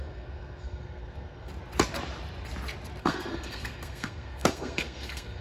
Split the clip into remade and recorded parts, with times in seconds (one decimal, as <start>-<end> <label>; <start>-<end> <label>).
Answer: 0.0-1.5 remade; 1.5-3.0 recorded; 3.0-5.4 remade

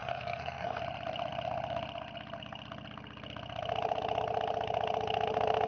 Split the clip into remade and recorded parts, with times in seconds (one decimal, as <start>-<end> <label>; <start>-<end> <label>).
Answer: 0.0-0.8 remade; 0.8-5.7 recorded

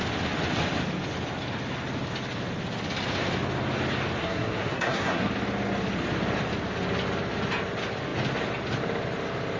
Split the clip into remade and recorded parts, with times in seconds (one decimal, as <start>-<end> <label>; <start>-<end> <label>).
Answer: 0.0-4.2 recorded; 4.2-5.3 remade; 5.3-9.6 recorded

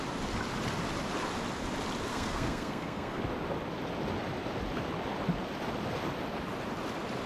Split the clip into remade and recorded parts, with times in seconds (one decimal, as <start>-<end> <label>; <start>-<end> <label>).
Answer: 0.0-2.1 recorded; 2.1-3.2 remade; 3.2-7.3 recorded